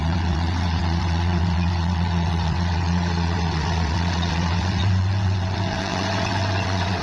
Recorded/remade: remade